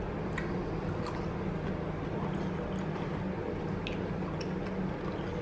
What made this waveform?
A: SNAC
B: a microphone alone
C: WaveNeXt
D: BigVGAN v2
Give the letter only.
B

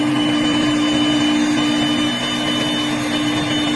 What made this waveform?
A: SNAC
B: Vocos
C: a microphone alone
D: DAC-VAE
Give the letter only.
C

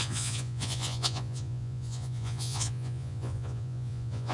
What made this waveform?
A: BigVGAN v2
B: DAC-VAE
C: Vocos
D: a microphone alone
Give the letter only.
C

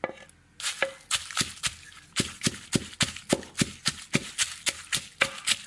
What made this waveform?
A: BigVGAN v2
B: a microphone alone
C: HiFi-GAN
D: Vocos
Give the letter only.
B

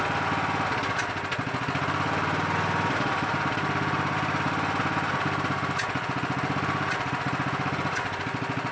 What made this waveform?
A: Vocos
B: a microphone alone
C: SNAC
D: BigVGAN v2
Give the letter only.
B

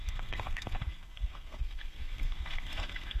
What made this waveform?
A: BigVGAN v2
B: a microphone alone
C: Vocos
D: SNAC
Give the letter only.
D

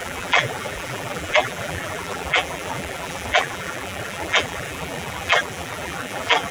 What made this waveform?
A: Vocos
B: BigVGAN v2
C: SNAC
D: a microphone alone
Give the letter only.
B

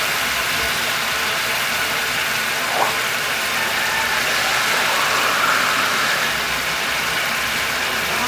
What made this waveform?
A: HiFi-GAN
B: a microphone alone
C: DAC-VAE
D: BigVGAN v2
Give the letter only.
D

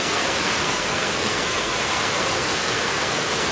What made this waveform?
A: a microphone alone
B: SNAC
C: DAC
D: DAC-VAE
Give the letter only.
B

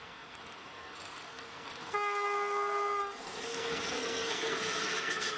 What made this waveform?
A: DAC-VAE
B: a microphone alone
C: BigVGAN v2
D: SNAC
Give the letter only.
D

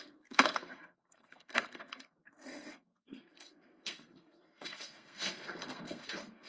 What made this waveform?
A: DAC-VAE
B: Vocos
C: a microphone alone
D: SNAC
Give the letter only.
D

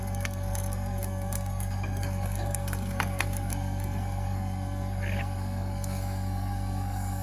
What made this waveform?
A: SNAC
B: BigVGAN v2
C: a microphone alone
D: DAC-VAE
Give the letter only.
A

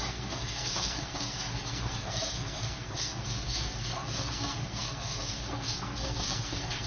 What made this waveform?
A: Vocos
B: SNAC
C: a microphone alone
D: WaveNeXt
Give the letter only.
B